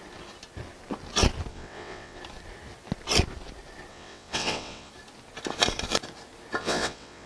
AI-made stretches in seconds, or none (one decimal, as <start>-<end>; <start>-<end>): 1.5-2.2; 3.9-4.9; 6.6-7.3